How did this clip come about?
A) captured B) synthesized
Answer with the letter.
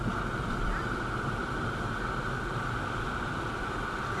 A